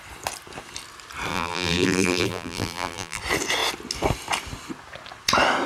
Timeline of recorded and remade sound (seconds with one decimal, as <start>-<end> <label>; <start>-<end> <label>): 0.0-1.3 recorded; 1.3-3.2 remade; 3.2-5.7 recorded